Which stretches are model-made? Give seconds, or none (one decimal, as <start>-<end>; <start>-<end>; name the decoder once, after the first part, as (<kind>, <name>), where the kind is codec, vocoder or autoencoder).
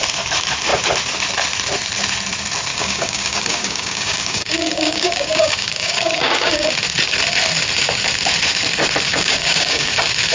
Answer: 2.7-6.7 (codec, DAC); 9.1-9.9